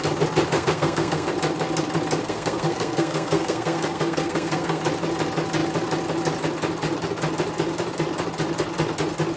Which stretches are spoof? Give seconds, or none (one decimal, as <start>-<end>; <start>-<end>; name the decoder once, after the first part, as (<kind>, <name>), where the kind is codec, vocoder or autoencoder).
0.5-1.3 (codec, SNAC); 2.2-4.8